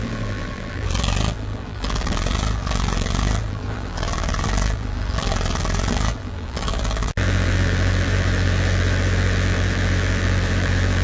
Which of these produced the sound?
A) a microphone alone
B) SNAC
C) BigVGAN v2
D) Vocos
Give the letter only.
C